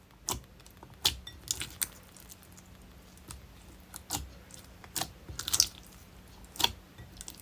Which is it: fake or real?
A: real